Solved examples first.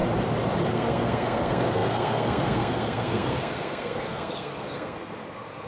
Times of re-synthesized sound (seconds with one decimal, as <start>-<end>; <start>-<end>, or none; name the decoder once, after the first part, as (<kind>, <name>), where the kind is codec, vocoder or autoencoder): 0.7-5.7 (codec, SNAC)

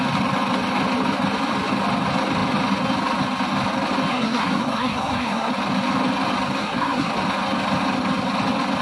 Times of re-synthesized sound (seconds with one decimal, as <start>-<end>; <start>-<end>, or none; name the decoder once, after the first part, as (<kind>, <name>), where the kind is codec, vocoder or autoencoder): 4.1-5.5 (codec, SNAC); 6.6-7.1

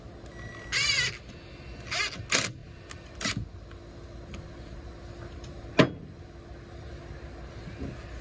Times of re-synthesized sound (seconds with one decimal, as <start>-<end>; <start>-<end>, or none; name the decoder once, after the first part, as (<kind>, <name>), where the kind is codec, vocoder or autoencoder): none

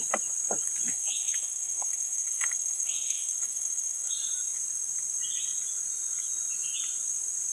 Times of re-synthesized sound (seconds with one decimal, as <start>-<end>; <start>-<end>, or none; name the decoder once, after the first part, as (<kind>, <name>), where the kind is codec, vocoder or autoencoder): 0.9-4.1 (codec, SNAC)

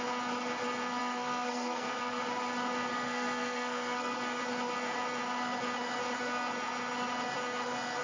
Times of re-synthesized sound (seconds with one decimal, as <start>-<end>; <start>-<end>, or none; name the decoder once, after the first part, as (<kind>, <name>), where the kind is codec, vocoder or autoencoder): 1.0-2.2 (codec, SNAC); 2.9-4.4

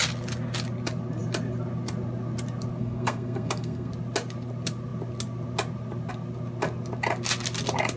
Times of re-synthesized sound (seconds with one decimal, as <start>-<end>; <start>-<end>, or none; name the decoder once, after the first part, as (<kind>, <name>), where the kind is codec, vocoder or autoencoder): 2.8-3.9 (codec, SNAC)

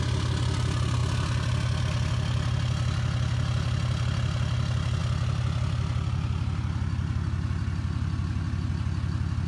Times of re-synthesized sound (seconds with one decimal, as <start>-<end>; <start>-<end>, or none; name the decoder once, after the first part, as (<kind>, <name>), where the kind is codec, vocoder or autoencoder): none